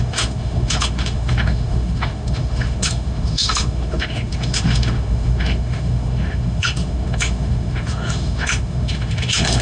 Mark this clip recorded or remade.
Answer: remade